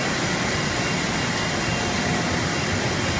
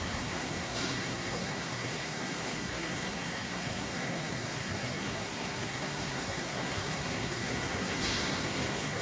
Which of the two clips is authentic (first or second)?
first